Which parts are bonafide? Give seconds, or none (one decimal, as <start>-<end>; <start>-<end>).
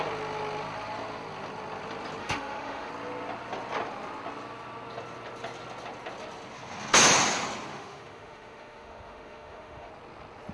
0.0-2.2; 2.9-7.7; 9.9-10.5